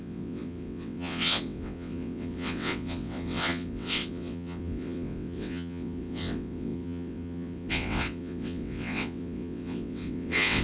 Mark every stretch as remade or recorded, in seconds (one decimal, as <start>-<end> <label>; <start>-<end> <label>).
0.0-10.6 remade